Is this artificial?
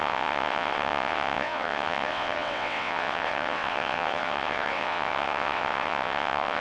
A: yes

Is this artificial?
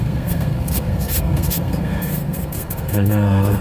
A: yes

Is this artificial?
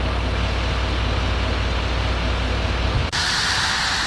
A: no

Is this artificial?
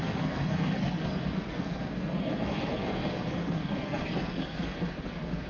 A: yes